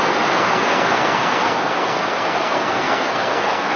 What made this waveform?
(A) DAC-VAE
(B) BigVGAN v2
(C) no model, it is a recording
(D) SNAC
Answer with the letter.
D